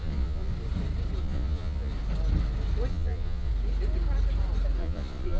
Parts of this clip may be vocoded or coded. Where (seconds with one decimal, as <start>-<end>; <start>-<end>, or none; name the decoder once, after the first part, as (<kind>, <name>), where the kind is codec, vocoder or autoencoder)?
0.0-0.5 (vocoder, Vocos); 1.2-1.9; 2.9-3.5; 4.8-5.4